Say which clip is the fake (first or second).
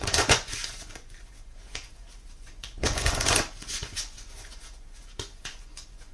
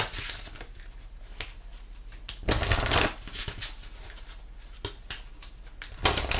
first